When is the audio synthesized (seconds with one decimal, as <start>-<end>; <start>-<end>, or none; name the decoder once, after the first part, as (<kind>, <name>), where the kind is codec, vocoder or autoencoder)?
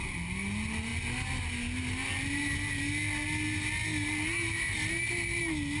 none